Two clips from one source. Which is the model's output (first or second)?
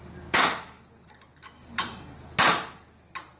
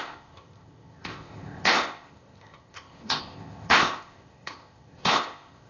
second